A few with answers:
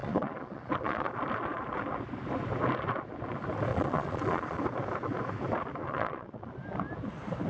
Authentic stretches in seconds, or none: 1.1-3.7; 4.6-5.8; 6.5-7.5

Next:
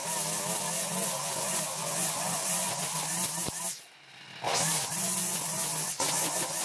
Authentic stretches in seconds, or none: 0.0-0.6; 3.1-4.9

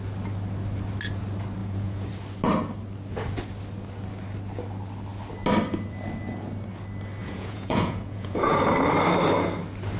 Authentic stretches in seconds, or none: 0.0-1.6; 2.1-7.2; 8.7-10.0

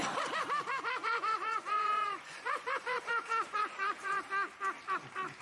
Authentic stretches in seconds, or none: 0.0-1.0; 4.2-5.4